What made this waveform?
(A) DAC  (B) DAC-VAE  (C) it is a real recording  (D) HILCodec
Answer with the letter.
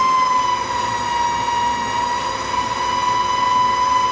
C